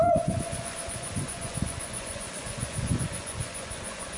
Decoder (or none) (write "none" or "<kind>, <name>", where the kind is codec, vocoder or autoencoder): vocoder, Vocos